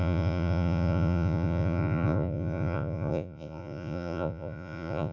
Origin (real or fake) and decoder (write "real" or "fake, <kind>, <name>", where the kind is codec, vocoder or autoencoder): fake, vocoder, Vocos